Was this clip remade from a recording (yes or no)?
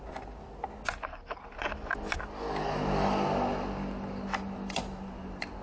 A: no